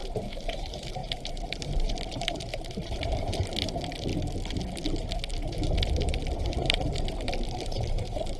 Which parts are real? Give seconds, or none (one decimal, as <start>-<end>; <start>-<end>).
4.1-6.4